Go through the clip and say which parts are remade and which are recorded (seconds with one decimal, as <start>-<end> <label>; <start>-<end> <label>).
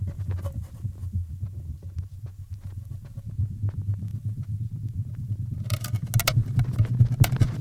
0.0-1.0 recorded; 1.0-3.2 remade; 3.2-4.1 recorded; 4.1-5.6 remade; 5.6-7.6 recorded